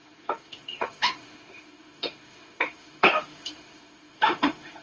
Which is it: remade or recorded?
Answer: remade